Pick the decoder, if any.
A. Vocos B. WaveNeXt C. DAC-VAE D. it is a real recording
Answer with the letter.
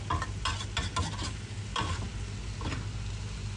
D